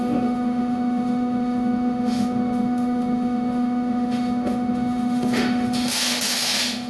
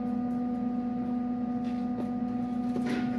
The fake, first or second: first